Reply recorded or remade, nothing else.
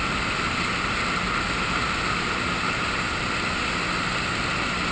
recorded